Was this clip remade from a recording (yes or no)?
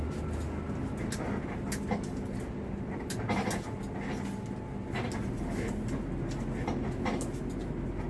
no